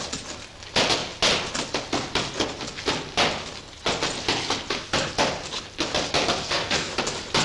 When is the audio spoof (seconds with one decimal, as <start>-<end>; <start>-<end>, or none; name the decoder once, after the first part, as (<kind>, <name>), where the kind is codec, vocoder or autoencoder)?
6.4-6.9 (codec, SNAC)